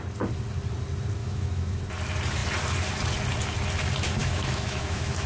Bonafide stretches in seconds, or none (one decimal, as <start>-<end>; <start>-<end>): 0.0-1.2; 1.8-4.2